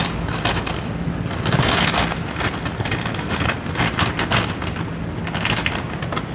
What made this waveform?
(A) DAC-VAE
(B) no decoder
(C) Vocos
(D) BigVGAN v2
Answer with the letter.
B